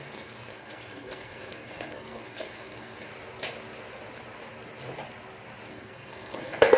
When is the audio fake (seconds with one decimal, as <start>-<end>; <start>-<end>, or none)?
0.0-3.1; 5.7-6.8